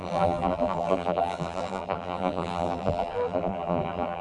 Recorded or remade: remade